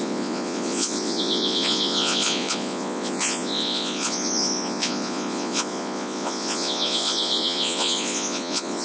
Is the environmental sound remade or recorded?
remade